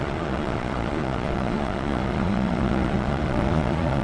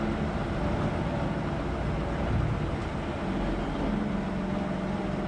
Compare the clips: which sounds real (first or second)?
second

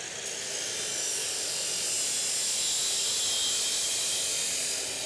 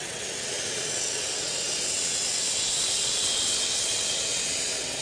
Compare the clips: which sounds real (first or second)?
first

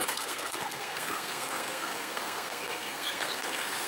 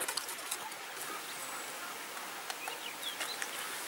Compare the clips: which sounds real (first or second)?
second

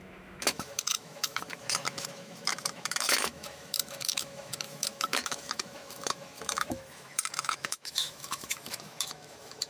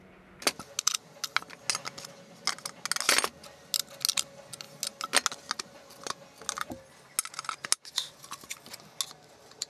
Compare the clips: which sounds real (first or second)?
second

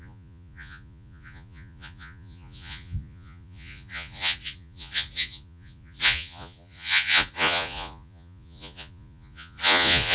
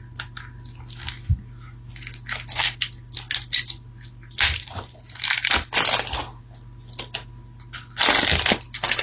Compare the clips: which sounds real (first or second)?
second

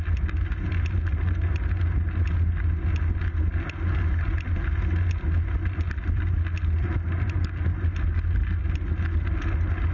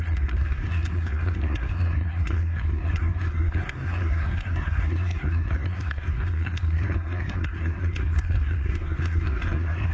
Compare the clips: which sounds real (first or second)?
first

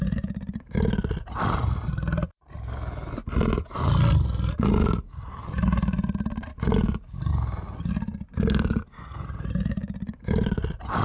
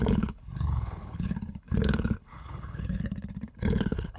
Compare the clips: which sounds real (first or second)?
first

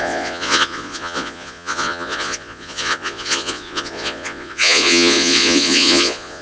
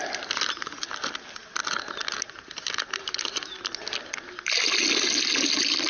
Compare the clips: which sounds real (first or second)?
second